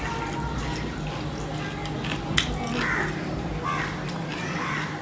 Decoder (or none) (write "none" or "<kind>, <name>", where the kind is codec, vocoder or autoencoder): none